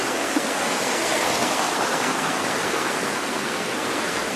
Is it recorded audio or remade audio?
remade